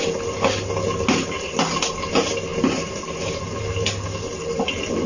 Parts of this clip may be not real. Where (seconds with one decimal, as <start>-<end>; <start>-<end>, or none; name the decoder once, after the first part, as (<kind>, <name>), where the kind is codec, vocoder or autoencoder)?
none